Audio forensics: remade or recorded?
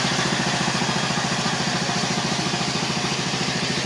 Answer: recorded